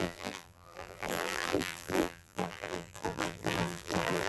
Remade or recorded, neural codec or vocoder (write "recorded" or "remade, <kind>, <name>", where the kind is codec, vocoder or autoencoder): remade, vocoder, BigVGAN v2